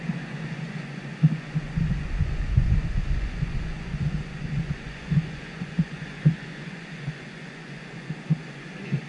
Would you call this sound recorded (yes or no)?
no